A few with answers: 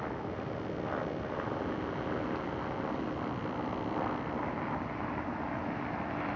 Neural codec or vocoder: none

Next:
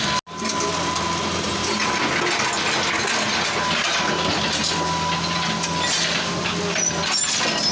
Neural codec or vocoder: none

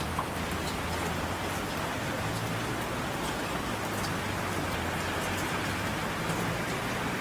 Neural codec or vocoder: none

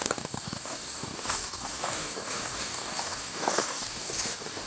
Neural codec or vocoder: codec, DAC